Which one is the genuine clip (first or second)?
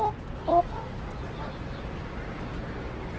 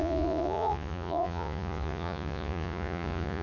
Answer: first